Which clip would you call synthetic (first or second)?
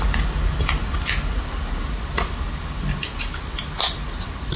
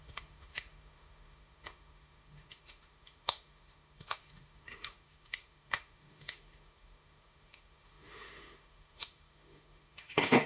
second